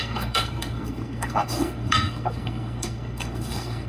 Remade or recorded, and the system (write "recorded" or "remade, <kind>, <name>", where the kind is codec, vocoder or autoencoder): remade, codec, SNAC